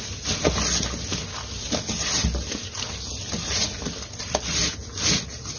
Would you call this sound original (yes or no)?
yes